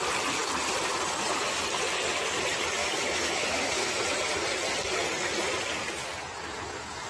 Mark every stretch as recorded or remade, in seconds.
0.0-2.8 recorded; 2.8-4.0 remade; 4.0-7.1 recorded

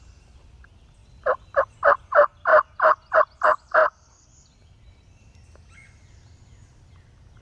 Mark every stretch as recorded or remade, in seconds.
0.0-3.8 recorded; 3.8-4.5 remade; 4.5-7.4 recorded

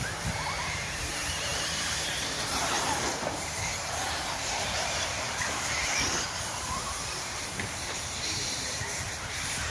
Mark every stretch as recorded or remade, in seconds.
0.0-9.7 remade

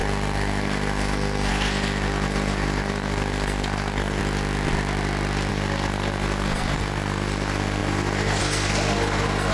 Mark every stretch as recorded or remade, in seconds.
0.0-4.2 remade; 4.2-5.5 recorded; 5.5-9.5 remade

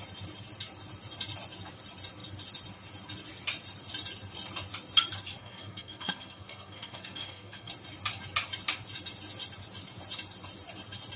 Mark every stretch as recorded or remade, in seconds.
0.0-5.4 recorded; 5.4-7.7 remade; 7.7-11.2 recorded

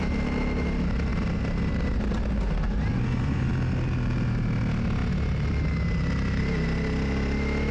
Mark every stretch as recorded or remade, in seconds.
0.0-2.9 recorded; 2.9-3.5 remade; 3.5-7.7 recorded